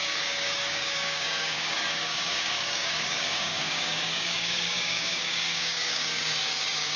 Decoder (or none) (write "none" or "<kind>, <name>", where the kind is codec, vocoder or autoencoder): codec, DAC